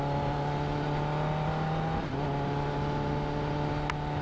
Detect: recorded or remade recorded